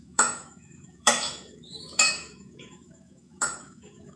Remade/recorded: remade